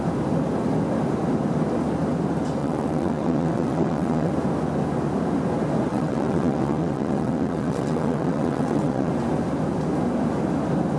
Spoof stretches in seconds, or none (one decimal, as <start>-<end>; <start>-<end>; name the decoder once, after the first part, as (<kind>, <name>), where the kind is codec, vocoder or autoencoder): 2.6-4.3 (vocoder, WaveNeXt); 5.9-9.1